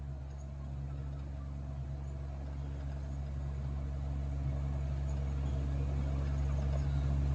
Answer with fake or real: real